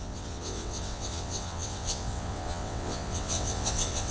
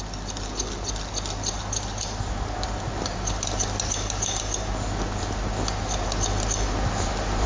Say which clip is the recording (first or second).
second